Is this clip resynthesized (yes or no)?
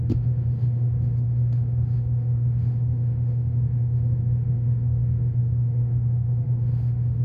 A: yes